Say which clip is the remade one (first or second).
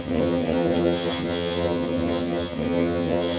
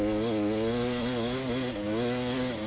first